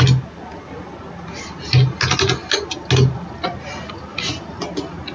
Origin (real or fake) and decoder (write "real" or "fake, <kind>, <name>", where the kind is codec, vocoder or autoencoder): real